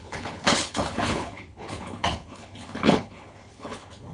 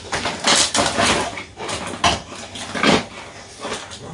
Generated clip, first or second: first